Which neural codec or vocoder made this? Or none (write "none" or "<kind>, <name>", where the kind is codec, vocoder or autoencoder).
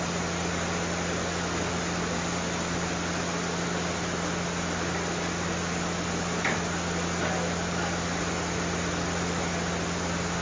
none